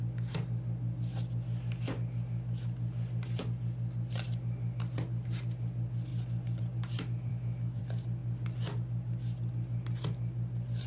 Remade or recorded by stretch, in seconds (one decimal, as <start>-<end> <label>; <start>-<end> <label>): 0.0-7.3 recorded; 7.3-7.8 remade; 7.8-10.9 recorded